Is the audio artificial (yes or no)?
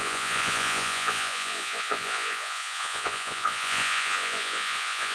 yes